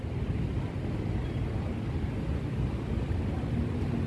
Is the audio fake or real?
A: real